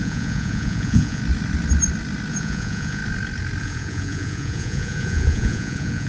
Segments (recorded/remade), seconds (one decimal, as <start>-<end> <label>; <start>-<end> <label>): 0.0-1.2 remade; 1.2-2.3 recorded; 2.3-3.0 remade; 3.0-3.6 recorded; 3.6-6.1 remade